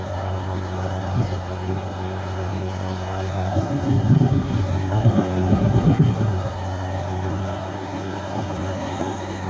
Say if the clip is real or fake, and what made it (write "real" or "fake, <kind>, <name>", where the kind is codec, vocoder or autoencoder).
fake, codec, SNAC